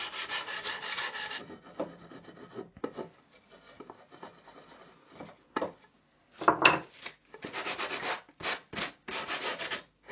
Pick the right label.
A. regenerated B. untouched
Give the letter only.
B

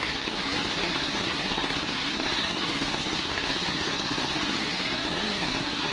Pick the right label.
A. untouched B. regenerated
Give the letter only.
B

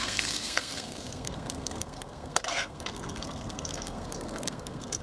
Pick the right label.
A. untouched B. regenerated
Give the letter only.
B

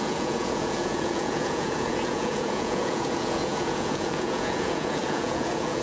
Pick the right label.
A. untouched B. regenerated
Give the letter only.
B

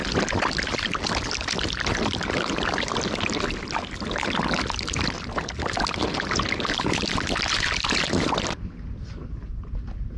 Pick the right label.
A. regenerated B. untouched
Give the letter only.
B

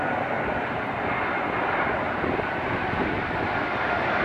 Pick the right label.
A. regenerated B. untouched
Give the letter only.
B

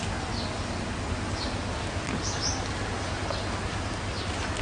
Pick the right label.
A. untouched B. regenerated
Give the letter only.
A